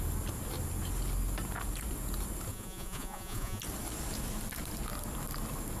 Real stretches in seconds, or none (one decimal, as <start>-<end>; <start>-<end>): 0.0-2.5; 3.6-5.8